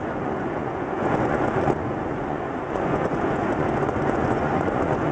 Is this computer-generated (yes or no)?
yes